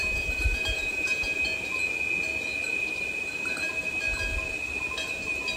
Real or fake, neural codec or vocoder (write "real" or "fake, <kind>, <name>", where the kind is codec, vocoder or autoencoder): real